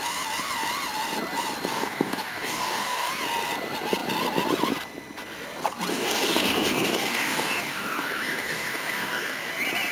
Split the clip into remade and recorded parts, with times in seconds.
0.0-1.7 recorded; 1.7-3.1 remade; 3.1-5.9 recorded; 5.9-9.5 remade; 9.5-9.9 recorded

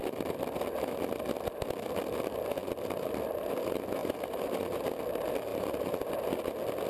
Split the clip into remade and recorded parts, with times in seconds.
0.0-4.0 recorded; 4.0-4.9 remade; 4.9-5.5 recorded; 5.5-6.1 remade; 6.1-6.9 recorded

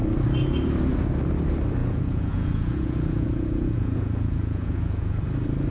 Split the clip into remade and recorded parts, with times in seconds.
0.0-1.8 recorded; 1.8-5.2 remade; 5.2-5.7 recorded

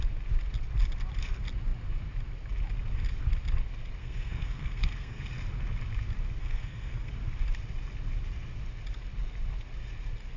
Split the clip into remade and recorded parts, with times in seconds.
0.0-4.0 recorded; 4.0-5.2 remade; 5.2-6.4 recorded; 6.4-7.1 remade; 7.1-10.4 recorded